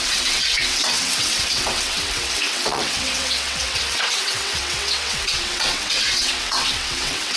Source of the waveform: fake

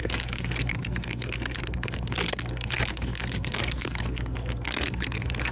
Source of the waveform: fake